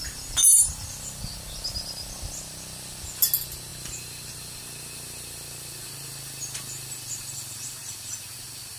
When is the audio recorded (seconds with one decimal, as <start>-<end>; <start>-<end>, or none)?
0.0-8.8